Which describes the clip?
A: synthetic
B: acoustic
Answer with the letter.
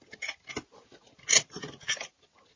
B